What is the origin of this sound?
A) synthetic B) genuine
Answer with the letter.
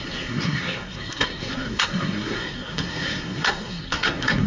A